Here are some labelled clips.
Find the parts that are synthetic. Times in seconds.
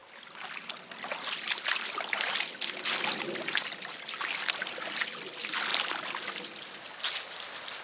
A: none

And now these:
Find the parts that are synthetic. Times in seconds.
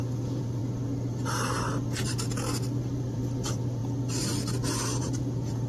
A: 0.0-0.6 (vocoder, BigVGAN v2); 2.8-3.8; 5.0-5.7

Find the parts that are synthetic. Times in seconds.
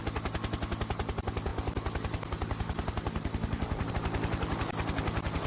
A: none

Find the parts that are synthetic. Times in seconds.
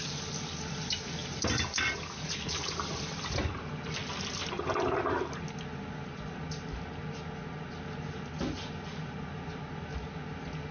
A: none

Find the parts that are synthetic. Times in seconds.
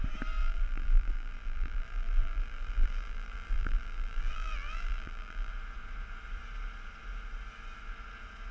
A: 0.4-5.5 (vocoder, BigVGAN v2)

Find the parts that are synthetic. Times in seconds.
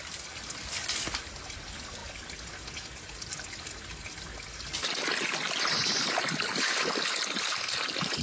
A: none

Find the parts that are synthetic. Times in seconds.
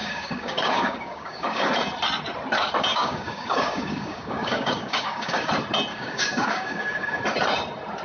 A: 0.0-1.7 (codec, DAC); 2.9-5.5; 5.9-7.2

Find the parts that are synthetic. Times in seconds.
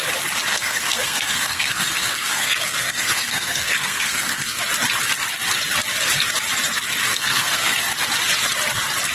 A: 0.5-4.6 (codec, SNAC); 7.1-7.8